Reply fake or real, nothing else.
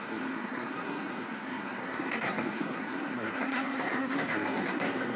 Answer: fake